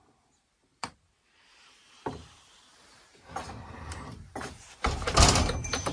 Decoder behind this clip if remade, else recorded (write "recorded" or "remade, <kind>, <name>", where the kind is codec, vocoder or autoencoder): remade, vocoder, BigVGAN v2